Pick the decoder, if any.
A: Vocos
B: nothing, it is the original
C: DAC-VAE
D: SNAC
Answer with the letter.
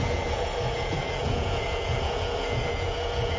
A